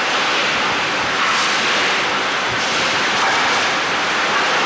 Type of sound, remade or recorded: remade